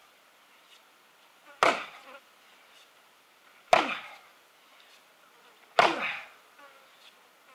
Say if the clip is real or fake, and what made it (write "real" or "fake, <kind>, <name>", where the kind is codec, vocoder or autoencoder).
real